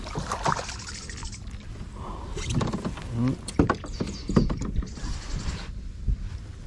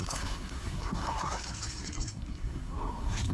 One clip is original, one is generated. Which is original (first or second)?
first